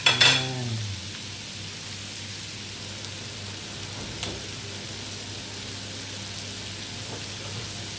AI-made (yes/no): no